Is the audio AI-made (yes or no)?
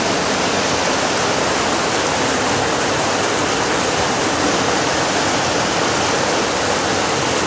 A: no